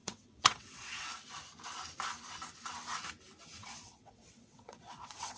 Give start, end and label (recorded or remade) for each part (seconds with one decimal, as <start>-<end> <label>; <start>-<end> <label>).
0.0-1.1 remade; 1.1-3.6 recorded; 3.6-5.4 remade